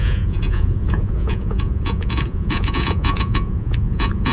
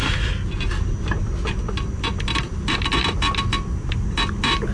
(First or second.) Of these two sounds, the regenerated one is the first